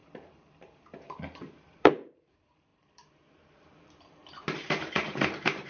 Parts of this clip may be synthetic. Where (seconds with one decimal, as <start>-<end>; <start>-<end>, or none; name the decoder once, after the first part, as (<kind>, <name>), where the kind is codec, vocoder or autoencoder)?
0.0-5.7 (vocoder, BigVGAN v2)